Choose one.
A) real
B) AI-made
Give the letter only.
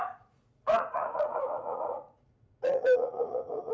B